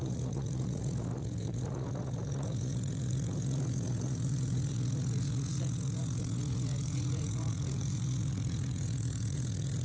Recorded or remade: remade